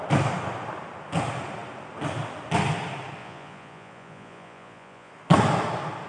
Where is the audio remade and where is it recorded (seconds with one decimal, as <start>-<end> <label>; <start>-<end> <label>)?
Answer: 0.0-3.2 recorded; 3.2-5.1 remade; 5.1-6.1 recorded